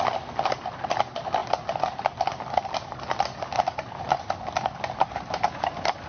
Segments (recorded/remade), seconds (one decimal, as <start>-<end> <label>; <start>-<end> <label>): 0.0-6.1 recorded